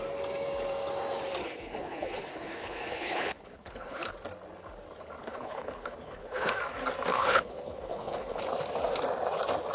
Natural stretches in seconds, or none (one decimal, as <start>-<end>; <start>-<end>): 0.0-1.4; 4.1-5.2; 6.5-7.1; 8.4-9.7